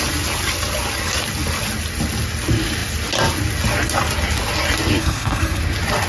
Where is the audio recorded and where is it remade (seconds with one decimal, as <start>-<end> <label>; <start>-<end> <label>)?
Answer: 0.0-5.0 recorded; 5.0-5.6 remade; 5.6-6.1 recorded